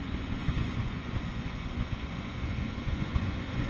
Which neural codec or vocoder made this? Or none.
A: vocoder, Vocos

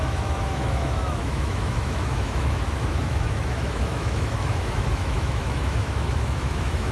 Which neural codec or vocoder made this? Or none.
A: autoencoder, DAC-VAE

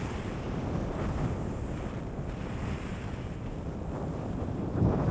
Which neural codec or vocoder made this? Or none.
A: none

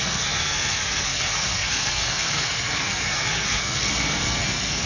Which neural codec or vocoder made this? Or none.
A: codec, SNAC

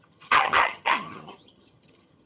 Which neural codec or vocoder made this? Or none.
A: vocoder, HiFi-GAN